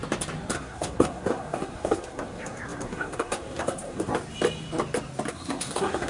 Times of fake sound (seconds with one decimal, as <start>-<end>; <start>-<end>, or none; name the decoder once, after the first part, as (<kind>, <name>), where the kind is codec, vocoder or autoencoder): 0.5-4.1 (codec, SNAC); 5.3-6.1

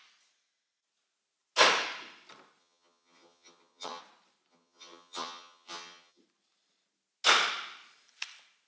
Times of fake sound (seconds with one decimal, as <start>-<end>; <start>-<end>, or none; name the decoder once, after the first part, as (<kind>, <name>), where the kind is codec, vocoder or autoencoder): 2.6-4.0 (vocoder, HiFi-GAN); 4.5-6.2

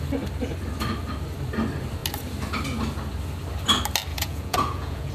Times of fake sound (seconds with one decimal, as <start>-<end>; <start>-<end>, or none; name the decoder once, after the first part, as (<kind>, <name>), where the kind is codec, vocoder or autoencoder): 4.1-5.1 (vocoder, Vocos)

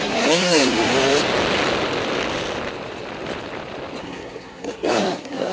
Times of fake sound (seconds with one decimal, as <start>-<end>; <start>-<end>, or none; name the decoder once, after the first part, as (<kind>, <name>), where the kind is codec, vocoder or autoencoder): 0.0-0.9 (codec, SNAC); 4.0-5.5